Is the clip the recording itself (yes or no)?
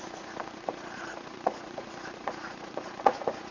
no